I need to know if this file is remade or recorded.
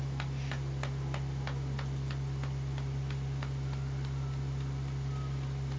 recorded